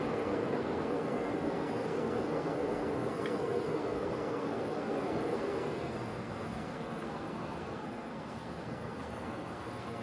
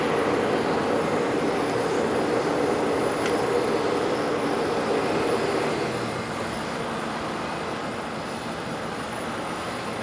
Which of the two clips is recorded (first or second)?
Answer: second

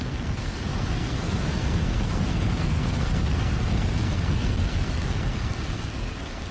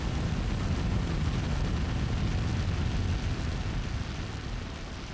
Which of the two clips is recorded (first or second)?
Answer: second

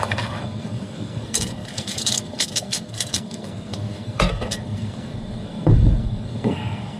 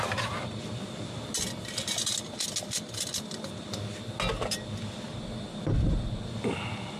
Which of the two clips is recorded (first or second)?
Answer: second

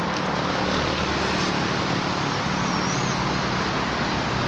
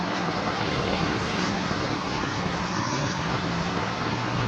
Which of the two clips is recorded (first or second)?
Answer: first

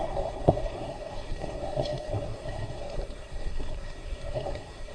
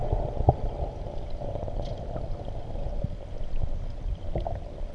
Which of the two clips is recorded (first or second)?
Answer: second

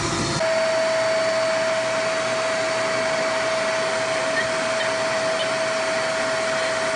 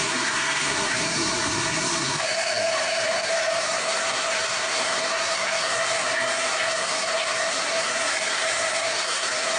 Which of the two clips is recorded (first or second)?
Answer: first